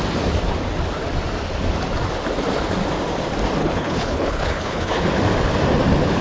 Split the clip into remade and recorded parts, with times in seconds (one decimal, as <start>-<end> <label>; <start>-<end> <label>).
0.0-3.6 recorded; 3.6-5.0 remade; 5.0-6.2 recorded